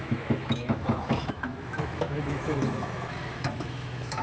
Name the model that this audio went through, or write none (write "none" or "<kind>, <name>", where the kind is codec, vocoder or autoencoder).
autoencoder, DAC-VAE